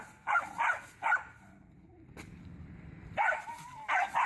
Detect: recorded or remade recorded